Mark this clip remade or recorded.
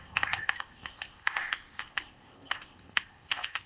remade